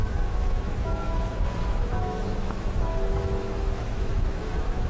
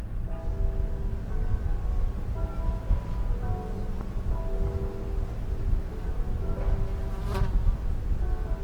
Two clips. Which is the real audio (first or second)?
second